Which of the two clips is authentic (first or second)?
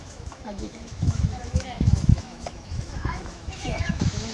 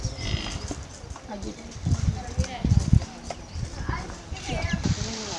second